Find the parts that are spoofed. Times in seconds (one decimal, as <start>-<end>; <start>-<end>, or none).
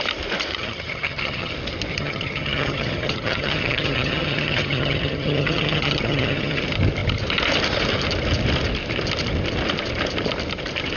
0.5-1.5; 1.9-6.6